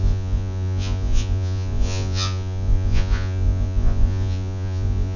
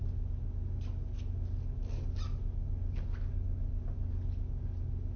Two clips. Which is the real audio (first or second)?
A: second